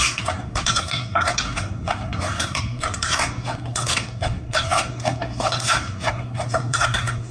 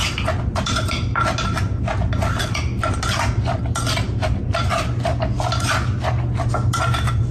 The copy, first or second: first